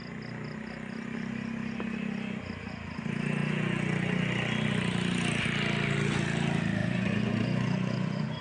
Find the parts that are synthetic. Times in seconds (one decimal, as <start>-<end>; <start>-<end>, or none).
6.8-8.4